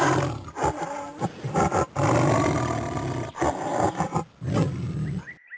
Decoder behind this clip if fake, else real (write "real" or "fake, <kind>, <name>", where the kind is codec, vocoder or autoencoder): real